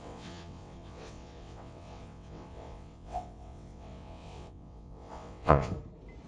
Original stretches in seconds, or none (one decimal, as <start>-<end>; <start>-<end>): 5.7-6.3